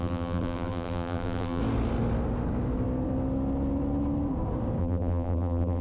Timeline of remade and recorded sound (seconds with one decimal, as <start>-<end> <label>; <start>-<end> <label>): 0.0-1.6 remade; 1.6-4.8 recorded; 4.8-5.8 remade